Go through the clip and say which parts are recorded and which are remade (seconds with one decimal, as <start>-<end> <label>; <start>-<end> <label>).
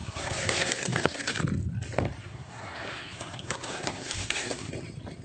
0.0-1.4 remade; 1.4-2.2 recorded; 2.2-4.7 remade; 4.7-5.2 recorded